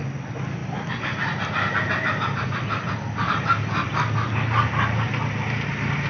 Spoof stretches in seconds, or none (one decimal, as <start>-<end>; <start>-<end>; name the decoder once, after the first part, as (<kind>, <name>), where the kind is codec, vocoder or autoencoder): none